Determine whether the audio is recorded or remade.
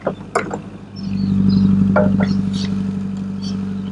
recorded